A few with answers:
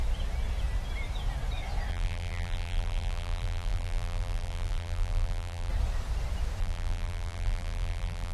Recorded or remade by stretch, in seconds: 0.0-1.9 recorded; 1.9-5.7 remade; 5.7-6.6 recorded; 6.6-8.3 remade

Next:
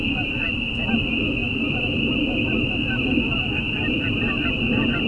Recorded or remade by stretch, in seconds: 0.0-5.1 recorded